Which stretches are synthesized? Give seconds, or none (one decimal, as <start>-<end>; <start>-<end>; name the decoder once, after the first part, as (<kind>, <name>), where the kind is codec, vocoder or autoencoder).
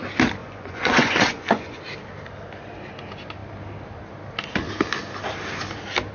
0.4-1.8 (vocoder, Vocos)